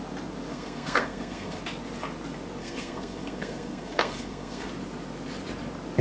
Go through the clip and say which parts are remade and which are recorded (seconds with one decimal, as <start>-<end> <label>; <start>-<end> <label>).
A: 0.0-0.5 recorded; 0.5-1.6 remade; 1.6-2.6 recorded; 2.6-4.7 remade; 4.7-6.0 recorded